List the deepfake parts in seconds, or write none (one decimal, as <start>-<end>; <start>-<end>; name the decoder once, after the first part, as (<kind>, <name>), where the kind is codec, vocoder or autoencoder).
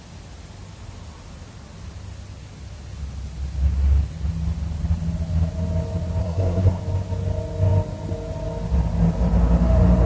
6.2-6.8 (codec, SNAC)